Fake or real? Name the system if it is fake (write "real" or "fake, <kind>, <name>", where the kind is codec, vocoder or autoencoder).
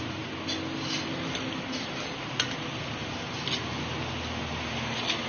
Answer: real